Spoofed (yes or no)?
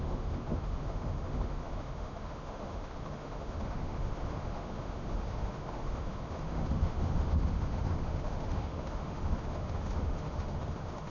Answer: yes